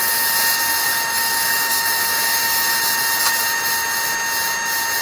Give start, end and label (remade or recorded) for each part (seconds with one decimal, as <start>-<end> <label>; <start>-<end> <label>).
0.0-0.9 recorded; 0.9-2.8 remade; 2.8-5.0 recorded